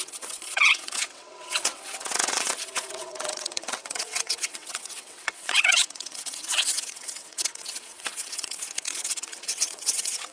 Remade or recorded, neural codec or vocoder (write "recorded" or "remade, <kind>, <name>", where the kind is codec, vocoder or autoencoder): remade, vocoder, WaveNeXt